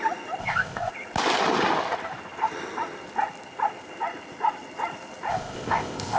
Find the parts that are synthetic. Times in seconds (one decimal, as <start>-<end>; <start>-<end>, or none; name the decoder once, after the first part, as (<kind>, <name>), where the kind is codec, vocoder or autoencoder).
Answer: 0.4-0.9 (codec, ZipCodec); 5.3-6.2